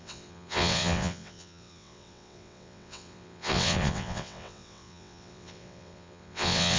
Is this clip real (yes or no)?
no